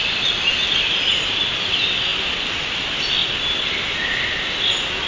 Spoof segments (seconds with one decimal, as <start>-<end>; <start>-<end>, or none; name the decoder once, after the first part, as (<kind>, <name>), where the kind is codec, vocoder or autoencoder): none